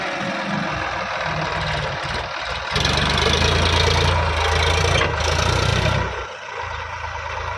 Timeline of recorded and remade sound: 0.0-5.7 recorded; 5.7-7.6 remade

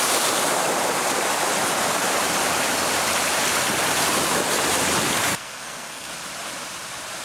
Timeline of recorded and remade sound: 0.0-5.3 recorded; 5.3-6.1 remade; 6.1-7.2 recorded

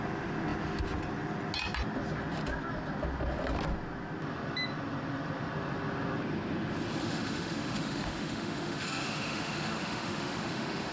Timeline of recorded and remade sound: 0.0-7.0 recorded; 7.0-10.9 remade

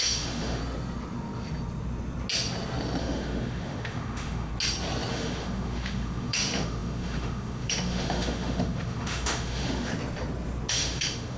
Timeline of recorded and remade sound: 0.0-0.6 remade; 0.6-3.0 recorded; 3.0-4.5 remade; 4.5-5.1 recorded; 5.1-9.9 remade; 9.9-10.7 recorded; 10.7-11.4 remade

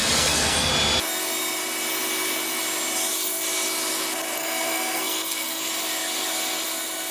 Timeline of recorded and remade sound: 0.0-0.7 remade; 0.7-4.4 recorded; 4.4-5.7 remade; 5.7-7.1 recorded